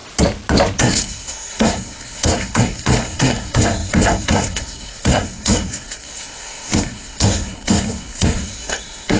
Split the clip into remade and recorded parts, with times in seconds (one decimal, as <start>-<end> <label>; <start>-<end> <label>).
0.0-0.8 recorded; 0.8-9.2 remade